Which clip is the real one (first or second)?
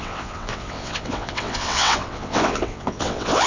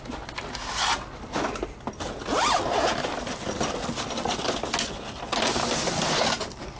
second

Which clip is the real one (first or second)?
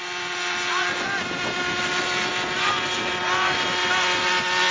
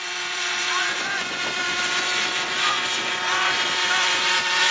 first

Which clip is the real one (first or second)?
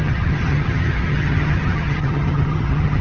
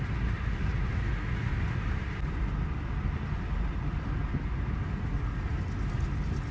second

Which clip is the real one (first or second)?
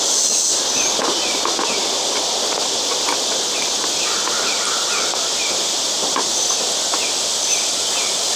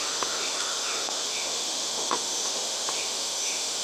first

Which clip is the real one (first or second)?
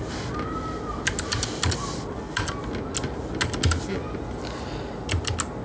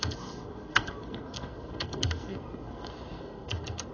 first